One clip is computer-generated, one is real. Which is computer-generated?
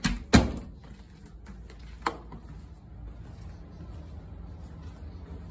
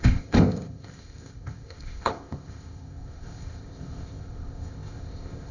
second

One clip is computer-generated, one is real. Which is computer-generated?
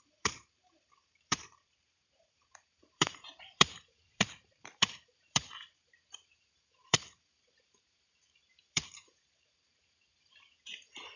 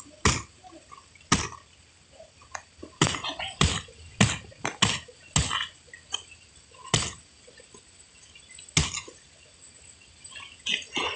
first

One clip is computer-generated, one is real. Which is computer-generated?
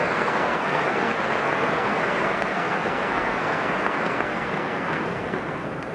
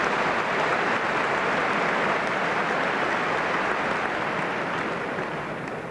first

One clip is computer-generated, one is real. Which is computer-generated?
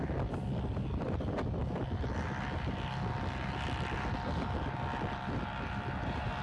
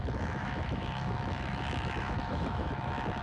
second